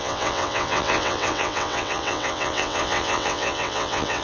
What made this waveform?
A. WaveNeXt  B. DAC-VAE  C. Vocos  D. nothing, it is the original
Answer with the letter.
A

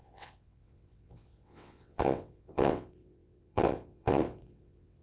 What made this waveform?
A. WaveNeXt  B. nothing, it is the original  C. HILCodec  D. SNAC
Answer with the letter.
A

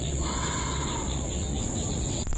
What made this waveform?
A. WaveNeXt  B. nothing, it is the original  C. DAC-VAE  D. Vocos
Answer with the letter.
A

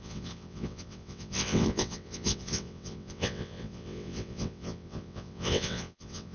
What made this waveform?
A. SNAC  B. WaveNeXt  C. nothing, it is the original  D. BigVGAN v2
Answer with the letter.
B